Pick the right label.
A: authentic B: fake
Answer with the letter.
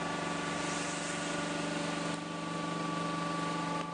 A